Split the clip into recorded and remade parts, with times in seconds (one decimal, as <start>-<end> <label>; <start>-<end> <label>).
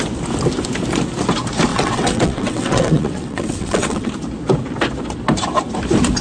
0.0-1.7 recorded; 1.7-4.1 remade; 4.1-6.2 recorded